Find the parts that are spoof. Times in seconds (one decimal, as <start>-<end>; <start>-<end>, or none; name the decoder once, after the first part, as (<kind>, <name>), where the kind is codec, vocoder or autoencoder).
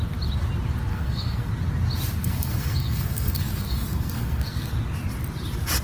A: 0.9-1.5 (codec, SNAC); 2.2-4.7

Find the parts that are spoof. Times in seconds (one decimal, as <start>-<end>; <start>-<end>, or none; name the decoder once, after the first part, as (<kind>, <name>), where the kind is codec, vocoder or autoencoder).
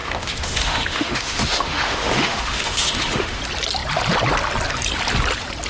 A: 0.0-3.4 (autoencoder, DAC-VAE)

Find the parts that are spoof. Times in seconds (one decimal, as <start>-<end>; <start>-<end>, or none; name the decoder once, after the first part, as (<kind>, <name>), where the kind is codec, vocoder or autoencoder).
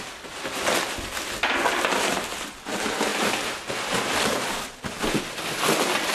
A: 0.0-6.1 (vocoder, BigVGAN v2)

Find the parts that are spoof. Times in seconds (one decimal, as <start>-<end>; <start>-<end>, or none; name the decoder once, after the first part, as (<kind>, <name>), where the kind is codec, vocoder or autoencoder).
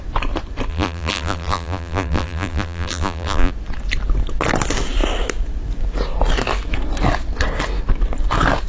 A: 0.7-3.5 (vocoder, BigVGAN v2)